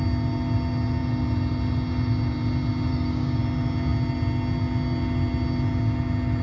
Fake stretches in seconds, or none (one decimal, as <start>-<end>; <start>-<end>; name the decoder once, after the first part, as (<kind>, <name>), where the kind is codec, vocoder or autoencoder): 2.9-3.4 (codec, DAC)